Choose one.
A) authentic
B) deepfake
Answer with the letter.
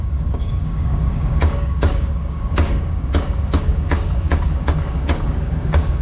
B